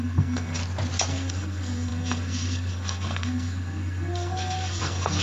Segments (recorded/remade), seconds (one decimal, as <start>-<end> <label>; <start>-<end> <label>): 0.0-0.6 remade; 0.6-1.1 recorded; 1.1-5.2 remade